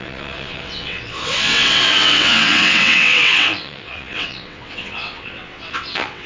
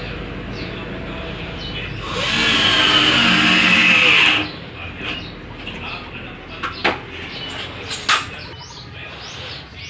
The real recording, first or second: second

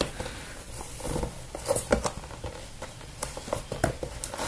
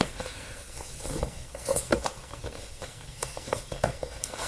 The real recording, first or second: first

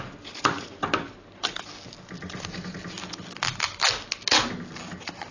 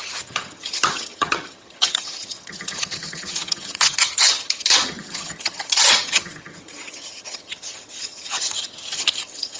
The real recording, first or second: first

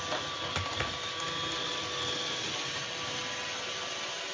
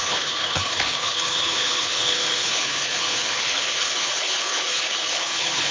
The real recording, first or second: first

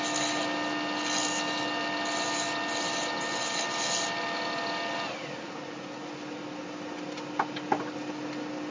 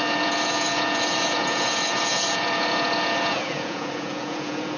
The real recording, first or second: first